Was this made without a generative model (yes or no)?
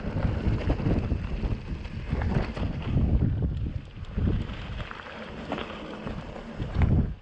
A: yes